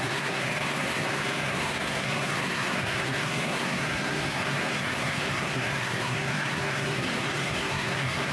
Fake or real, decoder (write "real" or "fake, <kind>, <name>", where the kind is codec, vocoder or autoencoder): fake, codec, SNAC